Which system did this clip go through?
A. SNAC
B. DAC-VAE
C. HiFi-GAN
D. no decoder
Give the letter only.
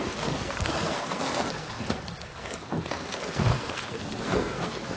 A